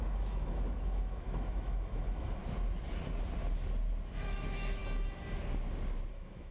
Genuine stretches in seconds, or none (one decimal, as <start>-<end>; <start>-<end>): 2.4-4.1; 4.8-6.1

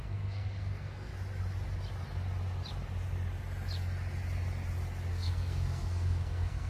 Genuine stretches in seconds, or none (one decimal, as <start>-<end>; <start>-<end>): 1.1-5.1

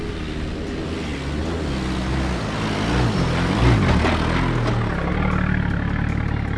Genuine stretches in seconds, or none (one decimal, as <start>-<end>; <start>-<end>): 0.0-6.6